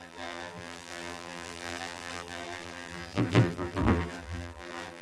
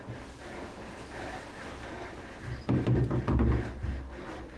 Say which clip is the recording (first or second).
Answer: second